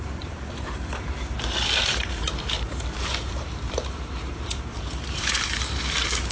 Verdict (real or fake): fake